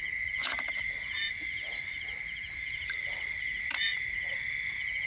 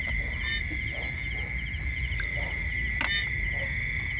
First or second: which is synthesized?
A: first